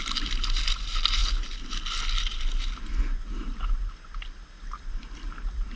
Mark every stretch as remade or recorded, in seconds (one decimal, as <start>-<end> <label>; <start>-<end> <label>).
0.0-5.8 recorded